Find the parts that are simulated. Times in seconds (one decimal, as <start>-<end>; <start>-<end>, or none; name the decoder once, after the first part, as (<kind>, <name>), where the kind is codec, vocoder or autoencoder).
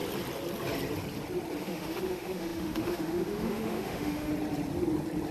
1.6-4.3 (autoencoder, DAC-VAE)